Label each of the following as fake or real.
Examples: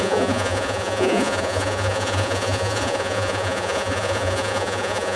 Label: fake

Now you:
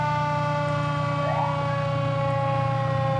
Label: real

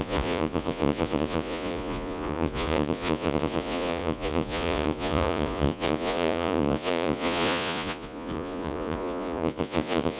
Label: fake